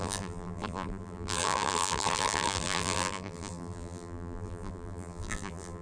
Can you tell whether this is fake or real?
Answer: fake